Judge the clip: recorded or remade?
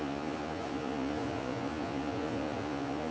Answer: remade